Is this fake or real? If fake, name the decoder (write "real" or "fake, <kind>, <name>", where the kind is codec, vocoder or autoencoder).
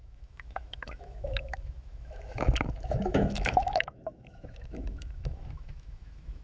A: fake, autoencoder, DAC-VAE